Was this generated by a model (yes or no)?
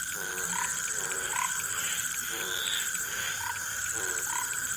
yes